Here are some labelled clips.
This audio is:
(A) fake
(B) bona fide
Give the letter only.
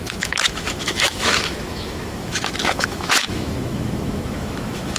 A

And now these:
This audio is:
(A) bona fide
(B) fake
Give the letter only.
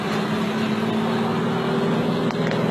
A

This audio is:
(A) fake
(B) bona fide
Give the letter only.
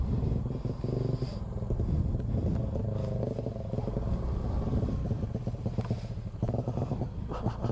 B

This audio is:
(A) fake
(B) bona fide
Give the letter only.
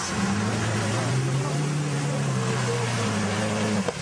B